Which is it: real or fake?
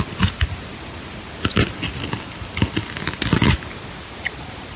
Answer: real